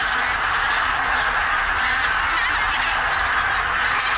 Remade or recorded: recorded